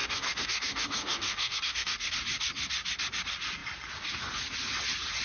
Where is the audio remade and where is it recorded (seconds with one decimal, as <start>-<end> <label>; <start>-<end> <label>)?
0.0-2.1 remade; 2.1-5.2 recorded